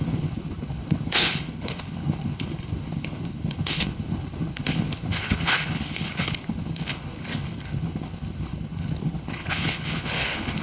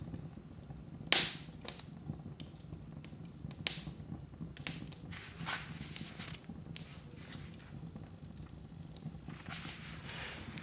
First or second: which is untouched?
second